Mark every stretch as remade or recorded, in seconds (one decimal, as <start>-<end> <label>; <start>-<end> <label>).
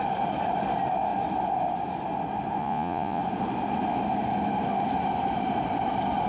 0.0-2.6 recorded; 2.6-3.2 remade; 3.2-6.3 recorded